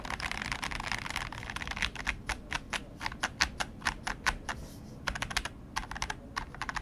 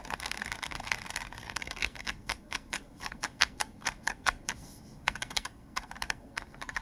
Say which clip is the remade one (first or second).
second